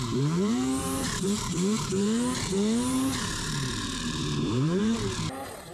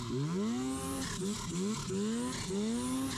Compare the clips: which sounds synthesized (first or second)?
first